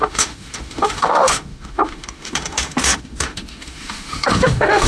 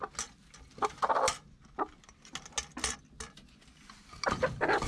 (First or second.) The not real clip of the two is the first